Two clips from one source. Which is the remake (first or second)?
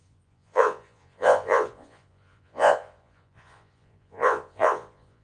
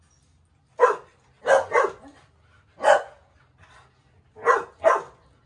first